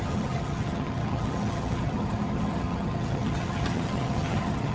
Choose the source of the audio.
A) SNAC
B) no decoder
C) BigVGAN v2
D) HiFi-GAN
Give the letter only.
D